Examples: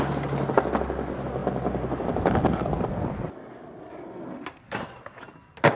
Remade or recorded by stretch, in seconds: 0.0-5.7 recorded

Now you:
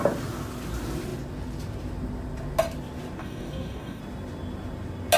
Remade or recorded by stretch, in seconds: 0.0-3.2 recorded; 3.2-4.0 remade; 4.0-5.2 recorded

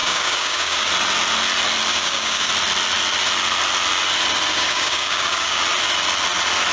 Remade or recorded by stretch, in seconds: 0.0-0.9 remade; 0.9-1.9 recorded; 1.9-2.5 remade; 2.5-4.5 recorded; 4.5-5.6 remade; 5.6-6.7 recorded